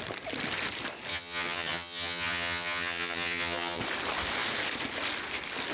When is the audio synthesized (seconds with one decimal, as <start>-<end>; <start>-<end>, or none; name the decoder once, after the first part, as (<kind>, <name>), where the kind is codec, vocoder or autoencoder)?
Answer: 1.1-3.8 (vocoder, HiFi-GAN)